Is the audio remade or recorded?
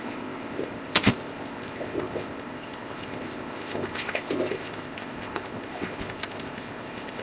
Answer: remade